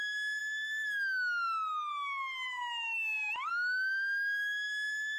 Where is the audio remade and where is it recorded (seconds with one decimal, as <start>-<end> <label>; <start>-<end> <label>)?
0.0-5.2 recorded

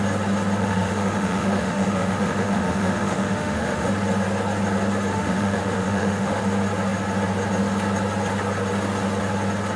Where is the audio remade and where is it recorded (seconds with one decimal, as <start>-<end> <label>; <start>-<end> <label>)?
0.0-0.6 recorded; 0.6-3.9 remade; 3.9-5.1 recorded; 5.1-6.4 remade; 6.4-9.8 recorded

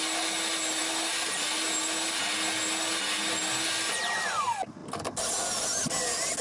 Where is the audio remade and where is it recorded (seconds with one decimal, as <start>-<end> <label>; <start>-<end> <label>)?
0.0-6.4 recorded

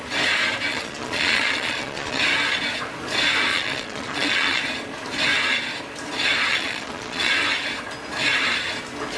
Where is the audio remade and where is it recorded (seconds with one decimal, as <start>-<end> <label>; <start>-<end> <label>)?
0.0-0.7 recorded; 0.7-2.2 remade; 2.2-3.5 recorded; 3.5-4.6 remade; 4.6-6.5 recorded; 6.5-7.3 remade; 7.3-9.2 recorded

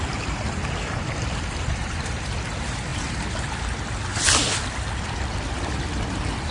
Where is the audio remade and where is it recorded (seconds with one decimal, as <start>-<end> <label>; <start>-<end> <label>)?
0.0-6.5 remade